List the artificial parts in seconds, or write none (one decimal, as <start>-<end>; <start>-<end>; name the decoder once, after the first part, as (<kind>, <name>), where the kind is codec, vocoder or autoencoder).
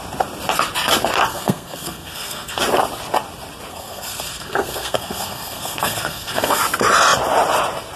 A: 1.3-2.6 (codec, SNAC); 3.7-6.6